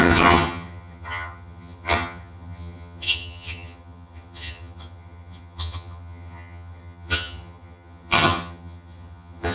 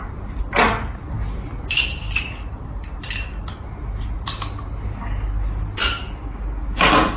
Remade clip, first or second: first